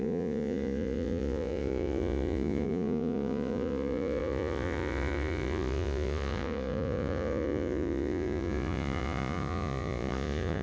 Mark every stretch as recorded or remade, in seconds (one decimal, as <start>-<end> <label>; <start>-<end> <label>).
0.0-10.6 remade